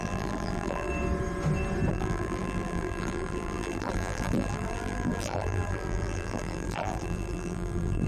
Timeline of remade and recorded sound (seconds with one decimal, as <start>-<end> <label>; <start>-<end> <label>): 0.0-0.9 remade; 0.9-1.9 recorded; 1.9-8.1 remade